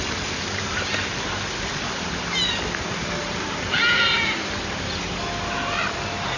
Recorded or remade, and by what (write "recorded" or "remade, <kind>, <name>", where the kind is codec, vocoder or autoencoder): recorded